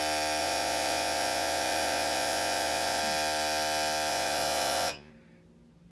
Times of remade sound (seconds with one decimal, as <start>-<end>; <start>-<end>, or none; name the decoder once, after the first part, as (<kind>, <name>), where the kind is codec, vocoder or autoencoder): 0.4-3.0 (vocoder, Vocos); 4.1-5.1